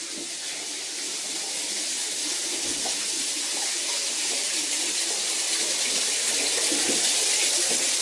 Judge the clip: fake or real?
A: real